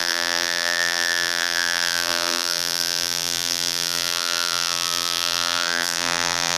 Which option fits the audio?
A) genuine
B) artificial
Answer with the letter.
B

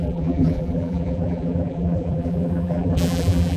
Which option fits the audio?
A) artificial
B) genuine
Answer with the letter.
A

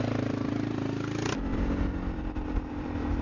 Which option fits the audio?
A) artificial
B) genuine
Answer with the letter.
A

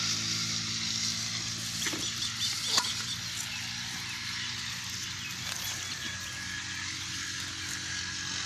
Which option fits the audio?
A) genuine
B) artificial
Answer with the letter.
A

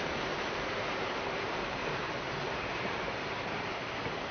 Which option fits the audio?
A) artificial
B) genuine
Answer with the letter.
A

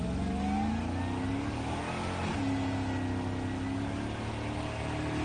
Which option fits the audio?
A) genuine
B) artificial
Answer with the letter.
A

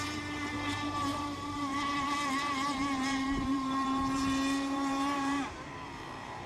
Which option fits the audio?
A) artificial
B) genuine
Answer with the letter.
A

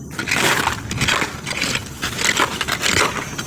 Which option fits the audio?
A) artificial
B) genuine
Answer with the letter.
B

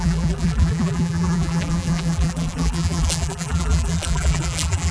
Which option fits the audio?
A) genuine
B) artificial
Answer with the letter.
B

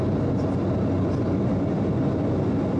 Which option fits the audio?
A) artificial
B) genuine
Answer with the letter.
B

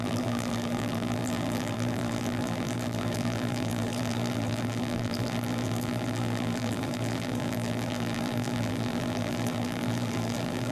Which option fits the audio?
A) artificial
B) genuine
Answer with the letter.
A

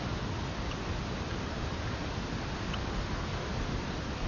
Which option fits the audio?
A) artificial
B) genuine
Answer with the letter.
B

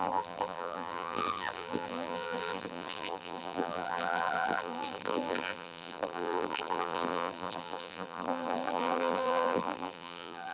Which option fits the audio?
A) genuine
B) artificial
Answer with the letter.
B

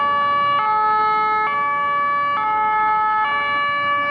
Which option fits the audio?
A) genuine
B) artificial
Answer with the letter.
A